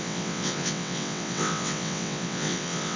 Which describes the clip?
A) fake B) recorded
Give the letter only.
A